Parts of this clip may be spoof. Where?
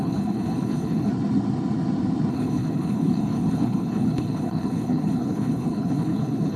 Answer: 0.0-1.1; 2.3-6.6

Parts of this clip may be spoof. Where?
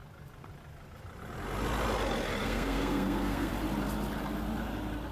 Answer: 2.4-3.5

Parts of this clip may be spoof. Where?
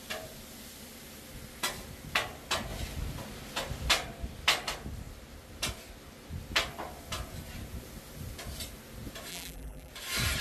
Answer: 9.3-9.9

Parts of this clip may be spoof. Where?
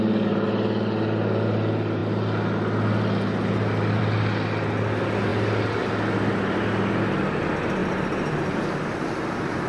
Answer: 7.8-8.6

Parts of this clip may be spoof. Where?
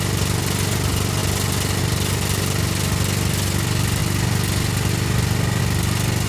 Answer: none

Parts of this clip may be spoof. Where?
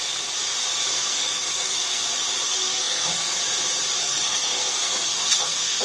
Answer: 0.9-2.0; 2.5-3.4; 4.0-5.8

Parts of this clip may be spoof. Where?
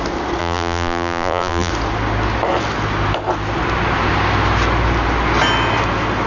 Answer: 0.4-1.7